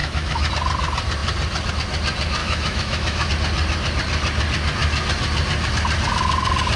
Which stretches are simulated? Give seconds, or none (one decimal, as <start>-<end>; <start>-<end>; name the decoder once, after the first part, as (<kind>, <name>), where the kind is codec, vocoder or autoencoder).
0.0-0.5 (autoencoder, DAC-VAE); 2.4-3.3